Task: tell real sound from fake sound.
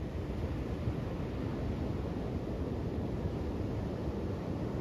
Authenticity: real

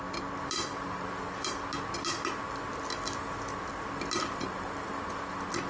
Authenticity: real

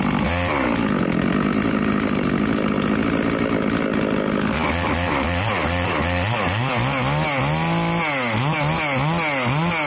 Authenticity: real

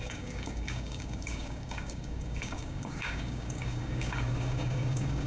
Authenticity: fake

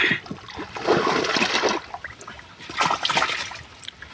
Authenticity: real